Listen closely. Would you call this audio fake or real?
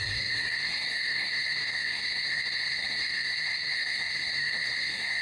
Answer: fake